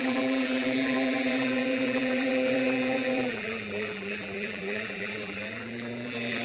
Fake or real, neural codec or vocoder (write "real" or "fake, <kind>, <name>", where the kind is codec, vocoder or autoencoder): fake, vocoder, BigVGAN v2